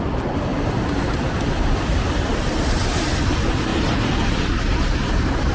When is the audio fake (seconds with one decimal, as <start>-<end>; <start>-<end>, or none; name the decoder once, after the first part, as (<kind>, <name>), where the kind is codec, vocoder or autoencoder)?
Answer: 0.0-5.5 (vocoder, BigVGAN v2)